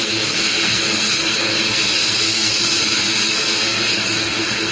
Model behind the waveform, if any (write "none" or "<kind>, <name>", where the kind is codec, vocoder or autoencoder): codec, SNAC